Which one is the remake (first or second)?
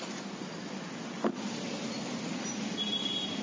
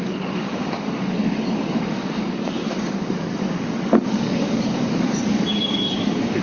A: second